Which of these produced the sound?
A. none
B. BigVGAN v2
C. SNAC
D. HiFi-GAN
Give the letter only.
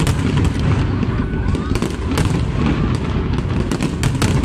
A